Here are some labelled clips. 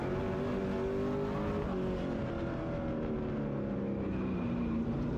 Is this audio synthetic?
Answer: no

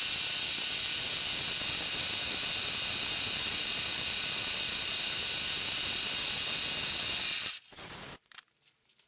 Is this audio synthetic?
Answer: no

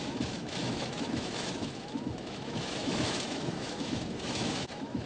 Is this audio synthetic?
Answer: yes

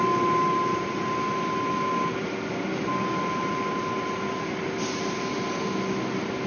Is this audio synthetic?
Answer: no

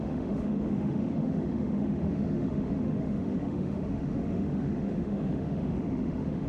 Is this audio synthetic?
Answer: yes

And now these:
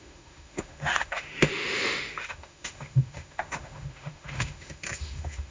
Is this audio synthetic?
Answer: yes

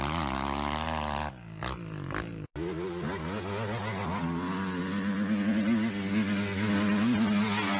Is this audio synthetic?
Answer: no